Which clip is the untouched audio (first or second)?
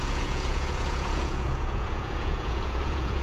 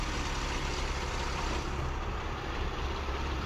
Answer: second